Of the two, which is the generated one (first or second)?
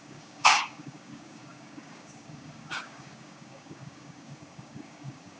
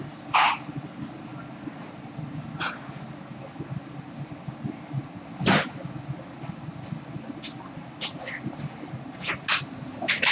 first